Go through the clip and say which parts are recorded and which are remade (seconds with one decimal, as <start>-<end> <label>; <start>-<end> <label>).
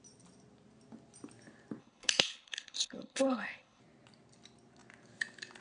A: 0.0-1.8 recorded; 1.8-3.8 remade; 3.8-5.6 recorded